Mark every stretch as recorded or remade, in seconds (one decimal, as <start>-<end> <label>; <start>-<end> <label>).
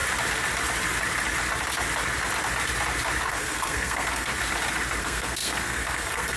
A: 0.0-3.3 recorded; 3.3-4.3 remade; 4.3-5.0 recorded; 5.0-6.4 remade